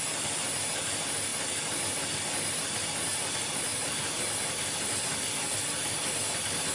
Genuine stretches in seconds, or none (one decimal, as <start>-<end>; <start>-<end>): 0.0-6.7